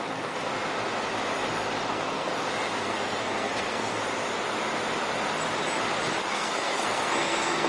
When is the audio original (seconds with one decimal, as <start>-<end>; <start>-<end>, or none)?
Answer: 0.5-1.9; 2.3-2.8; 4.0-6.3

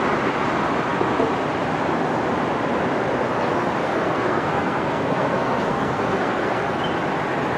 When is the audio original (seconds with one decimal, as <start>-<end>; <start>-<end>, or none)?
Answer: 0.0-3.8; 6.8-7.6